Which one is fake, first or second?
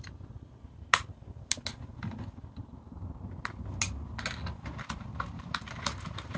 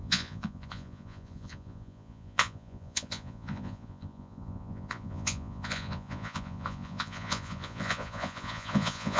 second